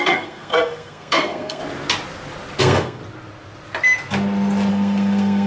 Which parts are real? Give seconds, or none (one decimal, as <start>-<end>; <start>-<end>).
1.6-2.6; 3.0-4.7